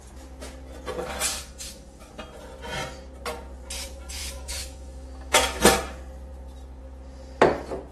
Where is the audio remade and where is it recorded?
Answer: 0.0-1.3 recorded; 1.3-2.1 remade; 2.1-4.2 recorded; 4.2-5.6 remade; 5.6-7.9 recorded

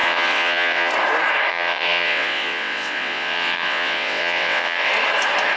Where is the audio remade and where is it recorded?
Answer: 0.0-0.9 remade; 0.9-1.5 recorded; 1.5-4.9 remade; 4.9-5.6 recorded

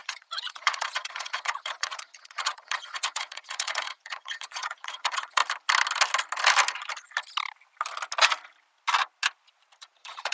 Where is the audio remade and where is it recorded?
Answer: 0.0-5.4 remade; 5.4-9.8 recorded; 9.8-10.3 remade

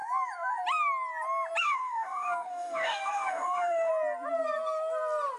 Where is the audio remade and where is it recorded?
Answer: 0.0-1.6 recorded; 1.6-3.9 remade; 3.9-5.4 recorded